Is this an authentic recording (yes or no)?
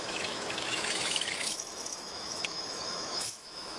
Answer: no